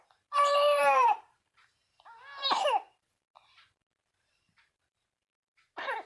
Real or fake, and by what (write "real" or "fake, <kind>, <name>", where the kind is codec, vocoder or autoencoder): fake, vocoder, BigVGAN v2